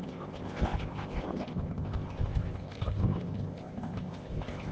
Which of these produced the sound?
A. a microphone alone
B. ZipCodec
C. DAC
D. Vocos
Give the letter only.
B